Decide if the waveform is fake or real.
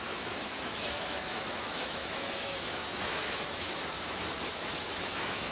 fake